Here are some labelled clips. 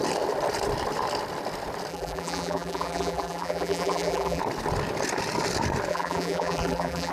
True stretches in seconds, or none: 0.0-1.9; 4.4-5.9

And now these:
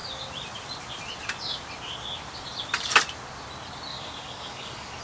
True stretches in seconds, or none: 0.0-3.9

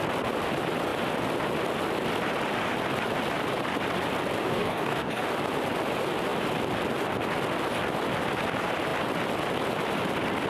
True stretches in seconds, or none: 0.0-4.4; 5.2-10.5

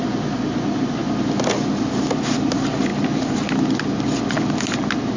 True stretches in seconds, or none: 0.0-5.2

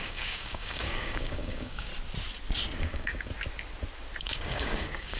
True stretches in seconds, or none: 1.9-2.8; 3.3-4.2